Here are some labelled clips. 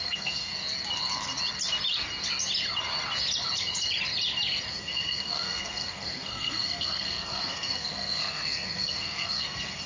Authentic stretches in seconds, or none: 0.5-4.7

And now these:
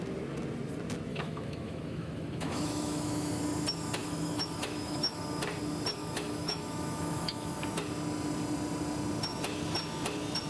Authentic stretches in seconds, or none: 0.0-1.1; 3.4-4.0; 5.2-6.0; 7.6-10.5

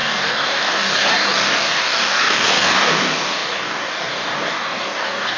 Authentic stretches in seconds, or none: none

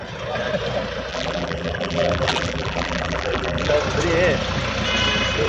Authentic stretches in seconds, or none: 0.0-1.1; 3.7-5.5

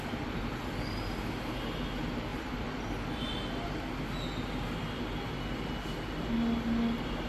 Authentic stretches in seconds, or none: 0.0-7.3